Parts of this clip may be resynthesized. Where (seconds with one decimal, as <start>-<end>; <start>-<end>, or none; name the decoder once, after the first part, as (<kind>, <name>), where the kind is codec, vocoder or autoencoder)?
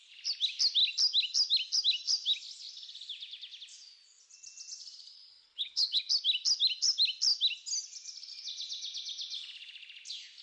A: 5.3-6.0 (codec, HILCodec)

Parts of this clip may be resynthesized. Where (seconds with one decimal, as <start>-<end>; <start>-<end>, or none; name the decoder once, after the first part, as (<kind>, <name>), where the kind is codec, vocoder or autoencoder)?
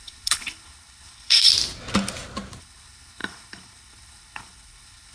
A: 0.0-1.5 (codec, HILCodec); 2.6-5.1